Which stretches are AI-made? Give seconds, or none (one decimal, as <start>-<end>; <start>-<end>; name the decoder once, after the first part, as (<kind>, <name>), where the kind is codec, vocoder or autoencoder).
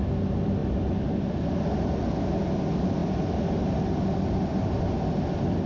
none